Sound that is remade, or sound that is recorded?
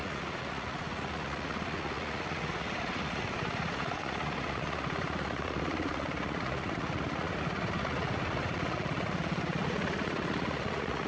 remade